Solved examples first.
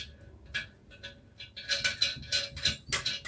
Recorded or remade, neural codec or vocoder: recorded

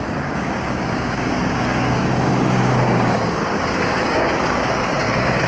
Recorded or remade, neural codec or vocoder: remade, codec, DAC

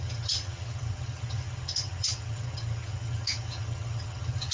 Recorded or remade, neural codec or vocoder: remade, vocoder, HiFi-GAN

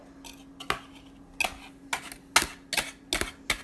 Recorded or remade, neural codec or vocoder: recorded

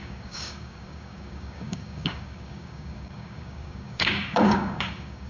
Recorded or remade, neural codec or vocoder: remade, codec, DAC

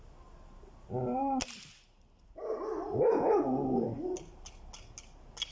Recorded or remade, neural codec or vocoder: recorded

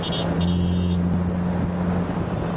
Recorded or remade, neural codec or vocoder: recorded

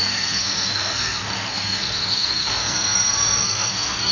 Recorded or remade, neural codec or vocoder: remade, codec, SNAC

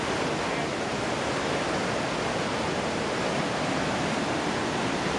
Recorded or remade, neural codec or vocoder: recorded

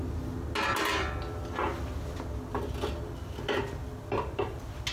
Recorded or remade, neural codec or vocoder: recorded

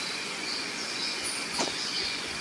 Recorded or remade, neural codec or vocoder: remade, vocoder, Vocos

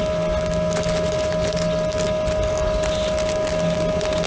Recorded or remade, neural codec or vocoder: recorded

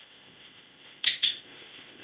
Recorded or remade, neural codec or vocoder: remade, codec, ZipCodec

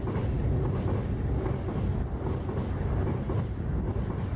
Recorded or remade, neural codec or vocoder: recorded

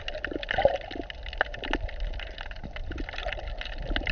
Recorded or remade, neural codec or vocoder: recorded